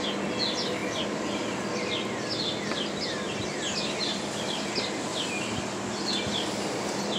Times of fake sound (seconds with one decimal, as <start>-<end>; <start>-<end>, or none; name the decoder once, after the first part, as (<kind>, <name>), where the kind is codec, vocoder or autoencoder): none